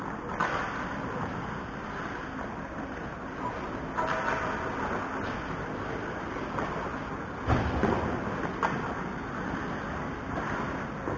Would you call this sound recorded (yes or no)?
yes